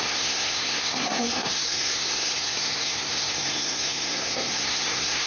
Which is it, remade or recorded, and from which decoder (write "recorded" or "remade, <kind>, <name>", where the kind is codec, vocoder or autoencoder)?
remade, codec, SNAC